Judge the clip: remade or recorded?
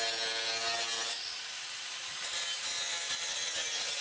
recorded